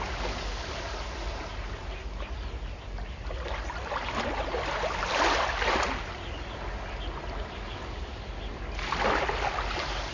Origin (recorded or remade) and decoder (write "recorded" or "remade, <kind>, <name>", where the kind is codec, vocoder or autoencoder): recorded